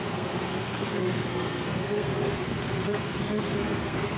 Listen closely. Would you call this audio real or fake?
fake